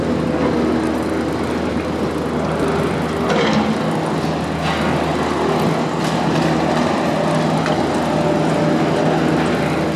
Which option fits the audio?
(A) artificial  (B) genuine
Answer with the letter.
B